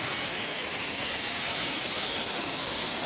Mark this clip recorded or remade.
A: remade